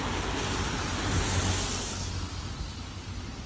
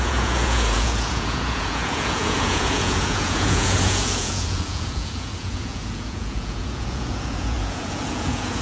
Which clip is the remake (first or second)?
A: second